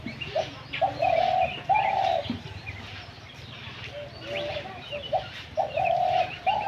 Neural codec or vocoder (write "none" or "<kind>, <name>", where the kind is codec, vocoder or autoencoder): none